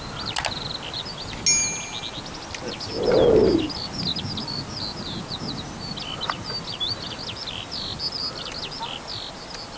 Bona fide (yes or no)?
yes